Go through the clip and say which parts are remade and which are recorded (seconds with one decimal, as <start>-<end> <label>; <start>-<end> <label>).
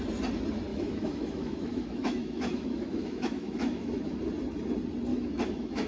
0.0-0.7 recorded; 0.7-4.2 remade; 4.2-5.1 recorded; 5.1-5.9 remade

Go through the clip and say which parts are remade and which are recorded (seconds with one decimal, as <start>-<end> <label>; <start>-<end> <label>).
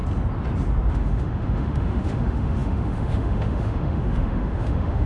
0.0-0.9 recorded; 0.9-5.1 remade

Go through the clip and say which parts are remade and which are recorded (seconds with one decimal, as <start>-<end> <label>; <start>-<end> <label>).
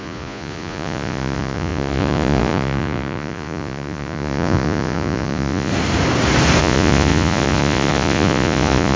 0.0-5.7 remade; 5.7-6.6 recorded; 6.6-9.0 remade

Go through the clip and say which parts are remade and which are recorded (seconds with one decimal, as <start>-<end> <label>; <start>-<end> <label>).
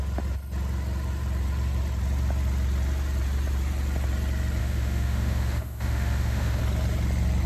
0.0-4.6 recorded; 4.6-6.6 remade; 6.6-7.5 recorded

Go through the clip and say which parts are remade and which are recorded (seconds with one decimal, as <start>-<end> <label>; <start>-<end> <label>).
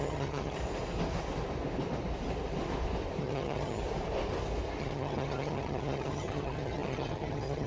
0.0-0.6 remade; 0.6-3.2 recorded; 3.2-3.8 remade; 3.8-4.8 recorded; 4.8-7.7 remade